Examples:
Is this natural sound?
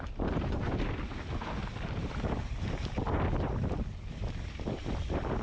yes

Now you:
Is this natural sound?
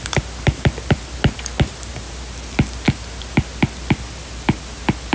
yes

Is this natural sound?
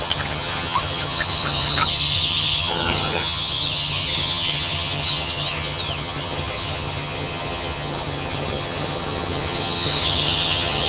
no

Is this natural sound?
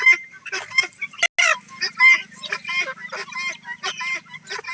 yes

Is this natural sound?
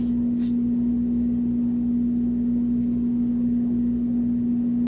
yes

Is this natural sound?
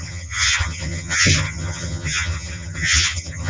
no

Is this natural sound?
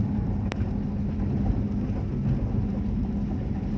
yes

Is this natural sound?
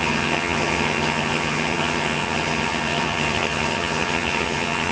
no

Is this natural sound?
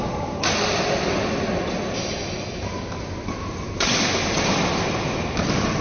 yes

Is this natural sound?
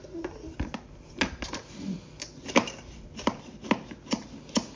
yes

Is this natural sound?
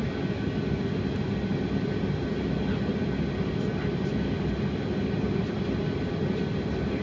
yes